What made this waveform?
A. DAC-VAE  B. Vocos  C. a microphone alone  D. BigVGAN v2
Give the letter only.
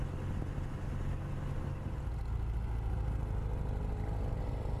C